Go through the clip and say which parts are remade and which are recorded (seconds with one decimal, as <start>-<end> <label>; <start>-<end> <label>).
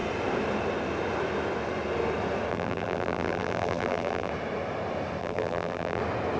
0.0-2.5 recorded; 2.5-4.3 remade; 4.3-5.2 recorded; 5.2-6.0 remade; 6.0-6.4 recorded